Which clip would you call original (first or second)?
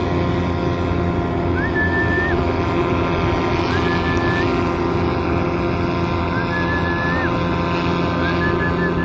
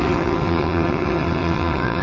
first